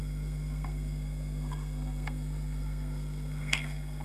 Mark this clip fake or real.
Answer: fake